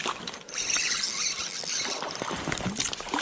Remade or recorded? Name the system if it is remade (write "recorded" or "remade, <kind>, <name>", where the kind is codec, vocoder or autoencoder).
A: recorded